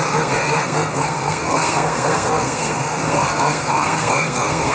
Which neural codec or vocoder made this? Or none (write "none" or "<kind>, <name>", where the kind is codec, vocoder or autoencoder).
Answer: codec, SNAC